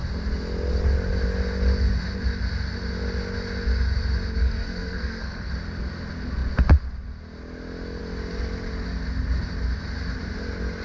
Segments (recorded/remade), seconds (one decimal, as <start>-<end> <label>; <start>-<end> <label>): 0.0-4.4 recorded; 4.4-5.5 remade; 5.5-10.8 recorded